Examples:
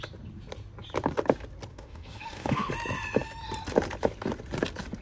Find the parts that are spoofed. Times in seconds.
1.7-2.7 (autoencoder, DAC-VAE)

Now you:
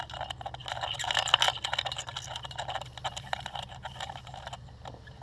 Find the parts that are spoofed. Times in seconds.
none

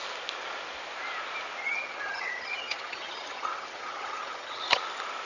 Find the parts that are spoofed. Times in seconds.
1.6-4.8 (vocoder, HiFi-GAN)

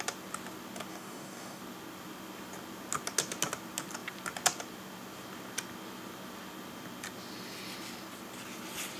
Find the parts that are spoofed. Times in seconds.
0.9-1.6 (codec, DAC)

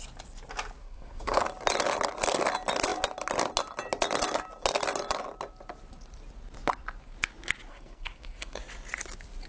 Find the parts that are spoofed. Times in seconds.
0.8-1.4 (codec, SNAC); 7.7-8.6

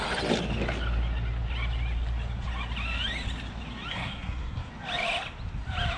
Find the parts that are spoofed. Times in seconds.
3.9-4.7 (codec, SNAC)

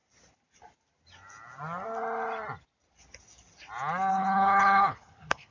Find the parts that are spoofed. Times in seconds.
4.1-5.5 (codec, HILCodec)

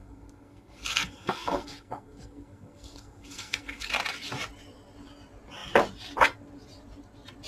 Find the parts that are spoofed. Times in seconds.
0.0-3.9 (codec, SNAC)